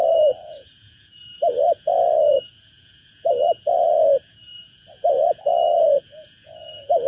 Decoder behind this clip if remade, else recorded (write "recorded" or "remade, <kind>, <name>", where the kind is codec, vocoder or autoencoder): remade, vocoder, Vocos